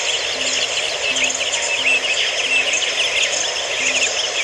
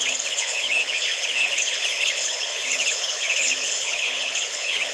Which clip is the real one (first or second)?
first